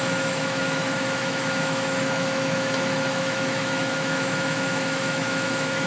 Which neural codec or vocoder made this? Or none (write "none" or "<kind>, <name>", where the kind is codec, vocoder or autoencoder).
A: autoencoder, DAC-VAE